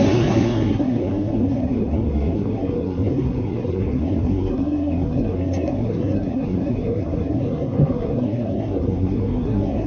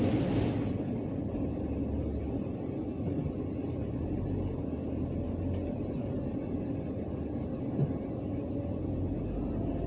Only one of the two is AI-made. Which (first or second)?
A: first